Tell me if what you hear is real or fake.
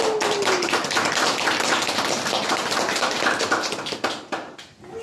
real